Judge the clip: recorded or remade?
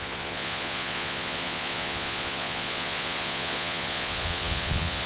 remade